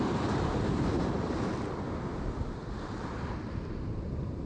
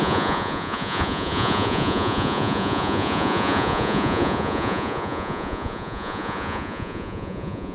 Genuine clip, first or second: first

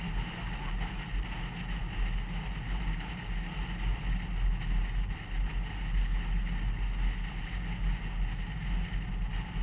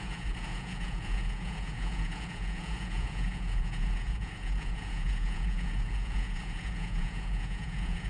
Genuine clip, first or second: first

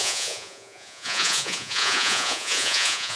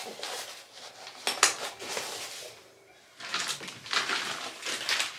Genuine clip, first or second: second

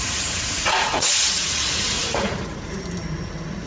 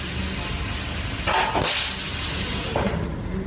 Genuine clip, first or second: second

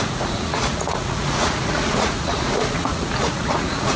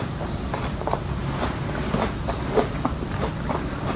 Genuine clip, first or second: second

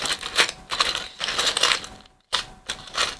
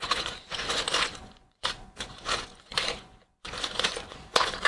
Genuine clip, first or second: first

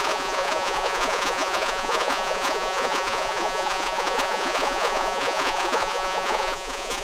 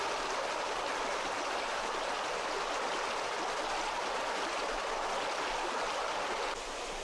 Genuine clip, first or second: second